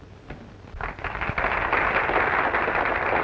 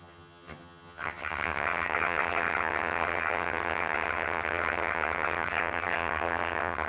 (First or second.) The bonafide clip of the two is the first